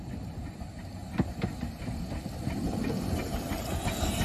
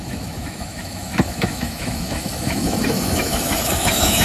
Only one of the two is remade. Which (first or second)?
second